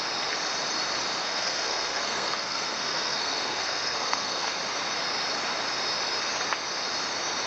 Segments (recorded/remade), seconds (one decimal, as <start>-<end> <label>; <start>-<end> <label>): 0.0-1.2 recorded; 1.2-4.6 remade; 4.6-7.5 recorded